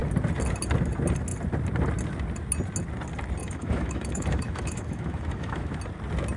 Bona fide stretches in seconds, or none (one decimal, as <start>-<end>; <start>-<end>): 0.0-3.4; 5.8-6.4